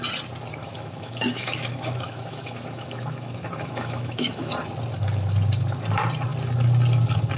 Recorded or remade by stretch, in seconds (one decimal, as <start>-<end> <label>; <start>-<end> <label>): 0.0-0.6 recorded; 0.6-4.5 remade; 4.5-7.4 recorded